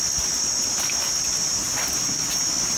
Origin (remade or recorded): recorded